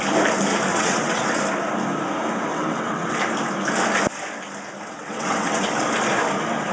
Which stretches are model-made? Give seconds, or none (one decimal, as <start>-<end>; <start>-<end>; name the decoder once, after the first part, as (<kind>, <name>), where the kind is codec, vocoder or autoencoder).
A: 0.7-1.4 (vocoder, WaveNeXt); 2.5-3.2; 4.8-5.8